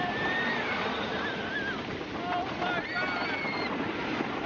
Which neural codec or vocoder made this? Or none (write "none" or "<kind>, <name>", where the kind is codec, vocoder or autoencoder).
none